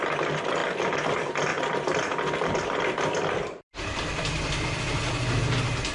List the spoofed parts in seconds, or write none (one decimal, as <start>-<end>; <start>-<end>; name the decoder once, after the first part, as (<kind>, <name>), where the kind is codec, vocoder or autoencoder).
0.6-1.1 (vocoder, BigVGAN v2); 1.5-5.0